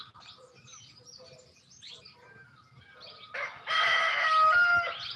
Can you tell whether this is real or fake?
real